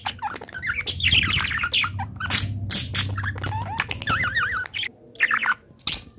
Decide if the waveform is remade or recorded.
recorded